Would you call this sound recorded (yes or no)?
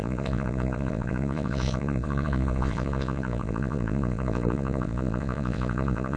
no